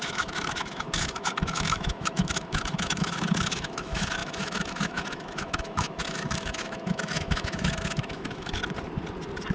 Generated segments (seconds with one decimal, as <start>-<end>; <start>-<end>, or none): 0.0-8.6